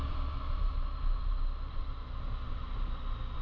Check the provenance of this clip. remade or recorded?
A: recorded